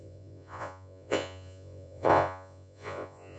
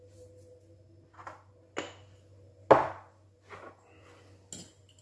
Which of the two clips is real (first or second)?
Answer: second